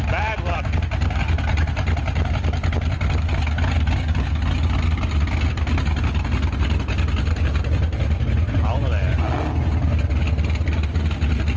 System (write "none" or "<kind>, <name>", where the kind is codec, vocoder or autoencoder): none